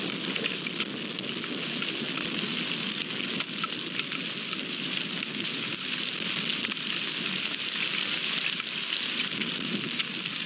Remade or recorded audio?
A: recorded